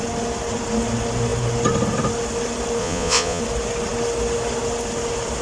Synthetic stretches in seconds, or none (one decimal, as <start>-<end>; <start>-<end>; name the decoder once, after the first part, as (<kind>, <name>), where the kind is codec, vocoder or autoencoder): 2.8-3.4 (vocoder, Vocos)

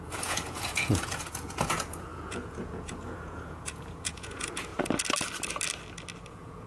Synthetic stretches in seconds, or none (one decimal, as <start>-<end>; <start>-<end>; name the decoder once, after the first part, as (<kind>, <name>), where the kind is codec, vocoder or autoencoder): 0.0-4.7 (vocoder, Vocos); 6.3-6.7

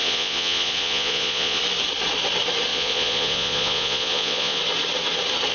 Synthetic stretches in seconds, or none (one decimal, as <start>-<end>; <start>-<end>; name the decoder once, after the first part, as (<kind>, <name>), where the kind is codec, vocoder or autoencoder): 0.0-1.6 (vocoder, Vocos); 2.7-4.6

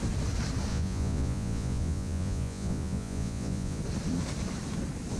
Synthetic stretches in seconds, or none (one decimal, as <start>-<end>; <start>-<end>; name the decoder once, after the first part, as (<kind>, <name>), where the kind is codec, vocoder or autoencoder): 0.7-3.8 (vocoder, Vocos)

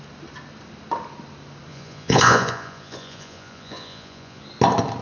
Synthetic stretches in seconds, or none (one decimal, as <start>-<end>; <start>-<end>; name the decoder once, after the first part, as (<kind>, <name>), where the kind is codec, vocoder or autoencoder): 1.7-4.4 (vocoder, Vocos)

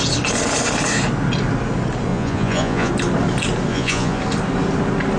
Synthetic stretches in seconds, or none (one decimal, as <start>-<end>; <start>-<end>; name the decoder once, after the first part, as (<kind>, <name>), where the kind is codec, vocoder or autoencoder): 2.1-2.9 (vocoder, Vocos); 3.7-4.2